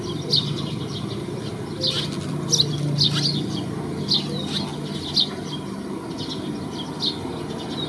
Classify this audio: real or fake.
real